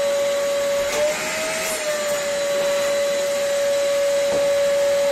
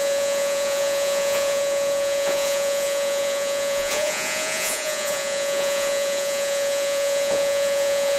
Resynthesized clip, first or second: second